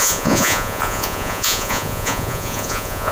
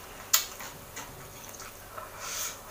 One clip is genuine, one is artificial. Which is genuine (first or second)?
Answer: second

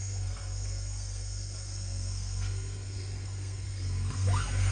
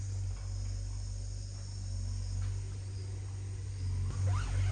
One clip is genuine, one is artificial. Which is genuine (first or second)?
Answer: second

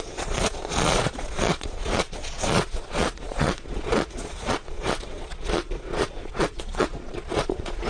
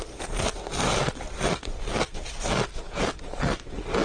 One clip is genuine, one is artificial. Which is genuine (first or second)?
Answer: second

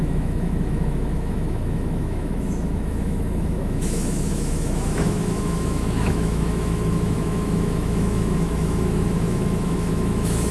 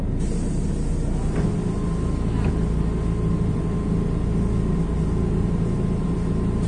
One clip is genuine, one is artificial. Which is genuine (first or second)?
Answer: second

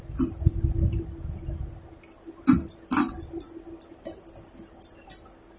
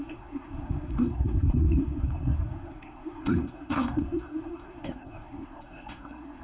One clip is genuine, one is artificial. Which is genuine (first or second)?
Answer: first